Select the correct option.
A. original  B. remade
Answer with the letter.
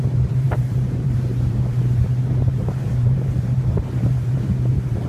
B